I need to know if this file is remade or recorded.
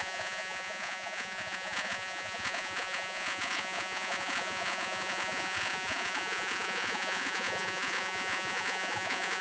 remade